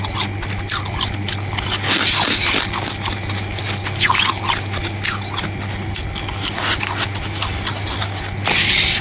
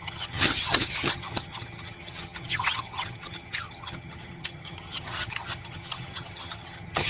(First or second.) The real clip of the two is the first